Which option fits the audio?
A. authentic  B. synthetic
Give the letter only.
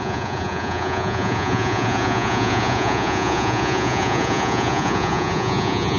B